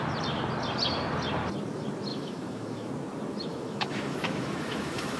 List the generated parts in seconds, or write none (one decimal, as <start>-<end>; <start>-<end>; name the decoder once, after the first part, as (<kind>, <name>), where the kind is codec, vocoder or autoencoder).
2.1-2.9 (autoencoder, DAC-VAE); 3.5-5.2